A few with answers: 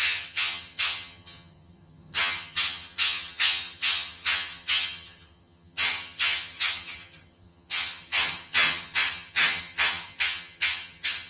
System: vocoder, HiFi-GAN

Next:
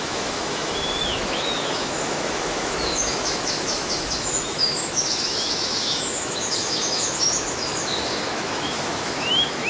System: autoencoder, DAC-VAE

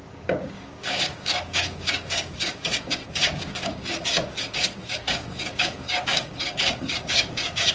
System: codec, DAC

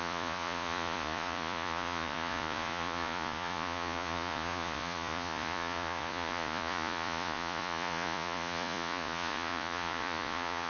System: vocoder, Vocos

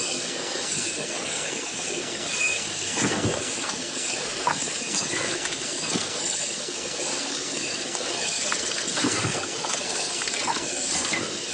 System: codec, SNAC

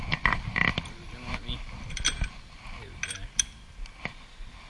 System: none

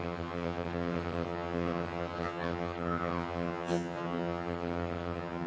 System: vocoder, HiFi-GAN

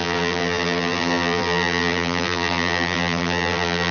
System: vocoder, BigVGAN v2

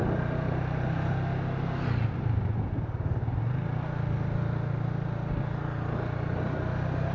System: none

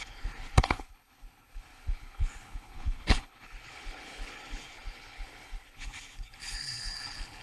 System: codec, HILCodec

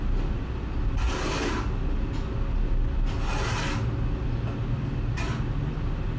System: none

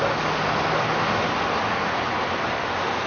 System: none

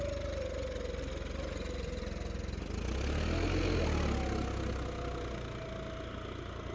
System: none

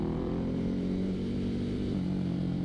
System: vocoder, BigVGAN v2